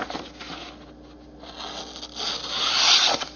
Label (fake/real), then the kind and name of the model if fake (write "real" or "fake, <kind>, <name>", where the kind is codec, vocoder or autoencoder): real